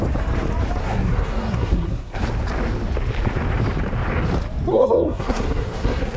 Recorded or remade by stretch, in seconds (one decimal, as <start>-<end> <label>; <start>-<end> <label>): 0.0-0.8 recorded; 0.8-2.2 remade; 2.2-4.7 recorded; 4.7-6.2 remade